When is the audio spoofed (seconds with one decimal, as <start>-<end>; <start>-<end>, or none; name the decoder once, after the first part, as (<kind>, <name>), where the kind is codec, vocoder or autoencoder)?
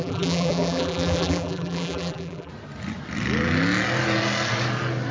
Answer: 0.0-2.5 (vocoder, BigVGAN v2)